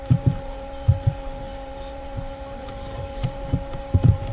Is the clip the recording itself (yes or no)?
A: no